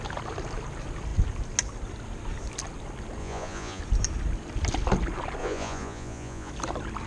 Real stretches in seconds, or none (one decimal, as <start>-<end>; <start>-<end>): 0.0-3.2; 3.8-5.4; 6.5-7.1

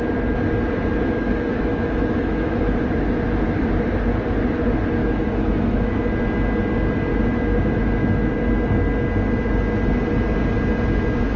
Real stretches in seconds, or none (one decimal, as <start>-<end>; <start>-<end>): 0.0-1.0; 2.6-5.0; 6.0-7.1; 8.3-11.4